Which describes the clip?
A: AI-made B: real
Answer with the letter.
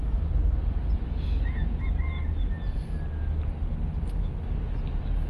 B